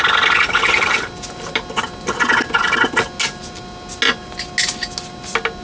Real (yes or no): yes